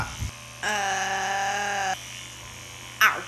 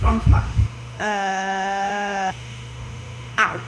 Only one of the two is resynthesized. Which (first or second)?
second